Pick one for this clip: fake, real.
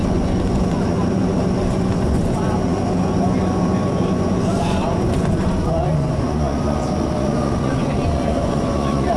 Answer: fake